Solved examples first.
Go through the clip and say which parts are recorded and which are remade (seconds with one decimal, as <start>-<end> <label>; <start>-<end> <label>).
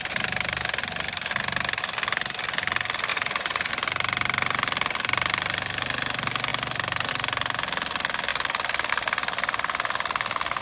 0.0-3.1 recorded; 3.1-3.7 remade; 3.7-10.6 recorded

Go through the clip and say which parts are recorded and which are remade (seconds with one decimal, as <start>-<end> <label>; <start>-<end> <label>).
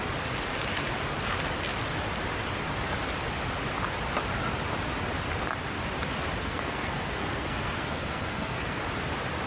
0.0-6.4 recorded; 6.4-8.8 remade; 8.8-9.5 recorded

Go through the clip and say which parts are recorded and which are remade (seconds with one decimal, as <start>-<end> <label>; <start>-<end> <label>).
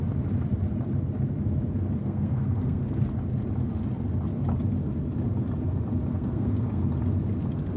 0.0-2.0 recorded; 2.0-2.9 remade; 2.9-6.1 recorded; 6.1-6.8 remade; 6.8-7.8 recorded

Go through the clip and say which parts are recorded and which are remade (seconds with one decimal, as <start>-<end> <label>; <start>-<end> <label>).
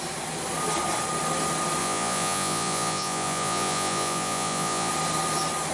0.0-1.8 recorded; 1.8-4.9 remade; 4.9-5.7 recorded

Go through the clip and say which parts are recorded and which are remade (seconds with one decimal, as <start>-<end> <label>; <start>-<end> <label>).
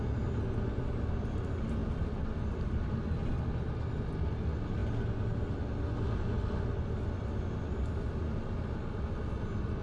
0.0-1.8 recorded; 1.8-3.3 remade; 3.3-9.8 recorded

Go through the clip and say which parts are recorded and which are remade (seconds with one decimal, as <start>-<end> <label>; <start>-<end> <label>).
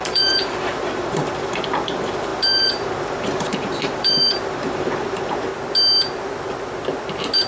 0.0-5.5 remade; 5.5-7.5 recorded